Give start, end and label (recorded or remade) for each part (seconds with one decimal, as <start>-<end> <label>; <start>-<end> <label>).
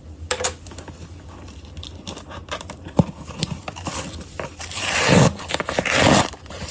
0.0-2.4 recorded; 2.4-5.4 remade; 5.4-6.7 recorded